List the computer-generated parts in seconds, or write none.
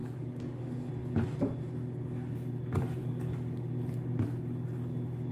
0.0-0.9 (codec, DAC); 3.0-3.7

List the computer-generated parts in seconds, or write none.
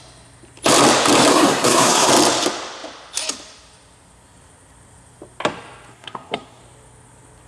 1.3-2.1 (codec, SNAC); 5.9-6.6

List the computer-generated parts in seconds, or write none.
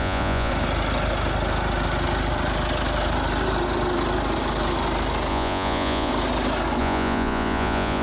0.0-0.5 (vocoder, Vocos); 5.3-6.1; 6.8-8.0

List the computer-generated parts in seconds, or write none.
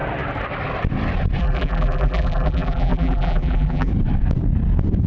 1.4-3.9 (vocoder, BigVGAN v2)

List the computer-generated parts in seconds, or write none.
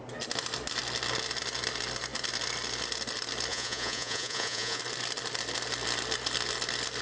3.5-4.8 (vocoder, Vocos)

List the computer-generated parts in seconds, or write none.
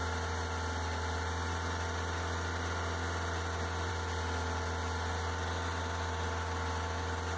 none